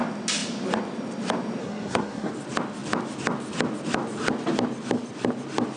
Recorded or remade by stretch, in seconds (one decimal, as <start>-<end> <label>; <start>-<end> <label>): 0.0-1.6 recorded; 1.6-2.3 remade; 2.3-5.8 recorded